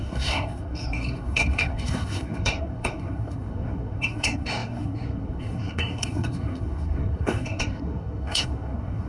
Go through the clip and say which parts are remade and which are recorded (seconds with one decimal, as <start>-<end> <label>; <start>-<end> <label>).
0.0-9.1 remade